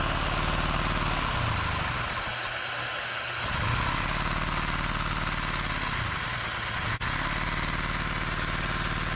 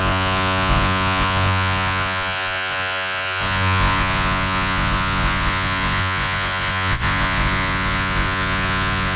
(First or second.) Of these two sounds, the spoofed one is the second